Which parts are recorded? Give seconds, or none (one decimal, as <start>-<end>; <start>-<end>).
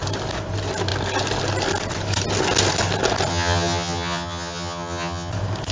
0.0-3.3; 5.3-5.7